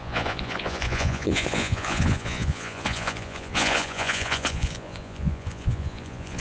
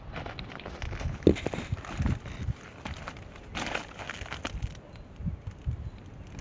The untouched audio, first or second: second